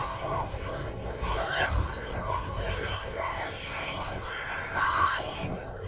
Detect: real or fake fake